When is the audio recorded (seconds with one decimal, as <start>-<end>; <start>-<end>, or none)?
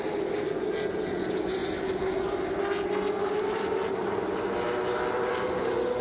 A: 0.0-6.0